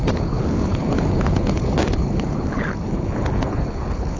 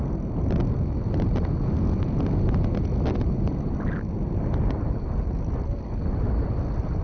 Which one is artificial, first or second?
first